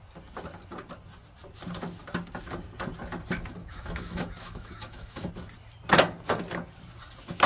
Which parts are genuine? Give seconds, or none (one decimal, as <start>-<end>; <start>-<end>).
0.0-3.6; 5.3-7.5